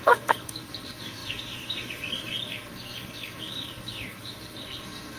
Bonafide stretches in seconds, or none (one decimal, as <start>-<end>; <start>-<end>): none